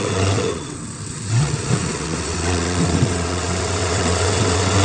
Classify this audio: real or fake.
fake